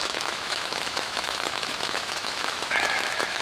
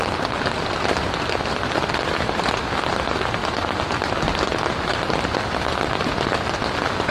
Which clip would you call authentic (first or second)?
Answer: second